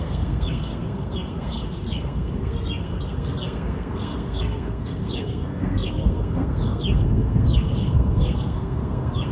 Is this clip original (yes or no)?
no